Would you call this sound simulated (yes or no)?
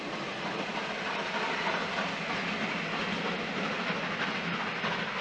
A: no